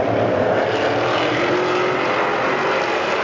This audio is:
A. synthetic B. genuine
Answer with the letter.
B